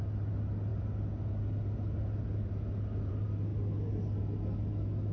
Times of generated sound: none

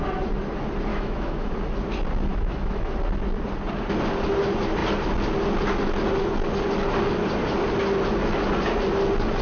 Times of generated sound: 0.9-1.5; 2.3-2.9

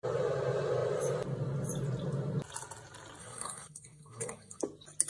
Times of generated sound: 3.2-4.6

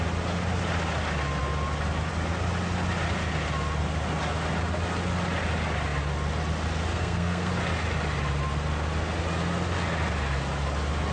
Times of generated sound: 6.9-7.5